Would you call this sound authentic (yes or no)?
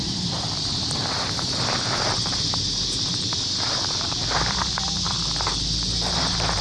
no